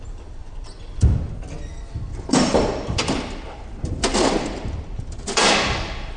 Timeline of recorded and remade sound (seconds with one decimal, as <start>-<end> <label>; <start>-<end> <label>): 0.0-6.2 remade

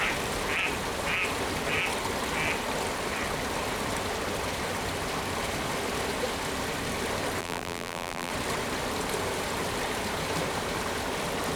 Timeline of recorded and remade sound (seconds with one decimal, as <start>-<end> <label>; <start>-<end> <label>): 0.0-7.4 recorded; 7.4-8.3 remade; 8.3-11.6 recorded

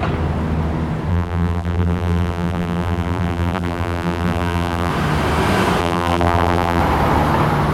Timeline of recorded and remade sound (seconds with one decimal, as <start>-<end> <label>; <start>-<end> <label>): 0.0-1.1 recorded; 1.1-4.9 remade; 4.9-5.8 recorded; 5.8-6.8 remade; 6.8-7.7 recorded

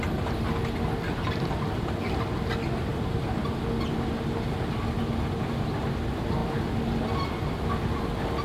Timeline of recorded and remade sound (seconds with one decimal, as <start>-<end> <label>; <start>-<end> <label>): 0.0-8.4 recorded